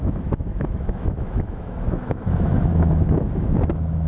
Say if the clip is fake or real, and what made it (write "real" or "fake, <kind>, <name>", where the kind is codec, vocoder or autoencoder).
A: fake, autoencoder, DAC-VAE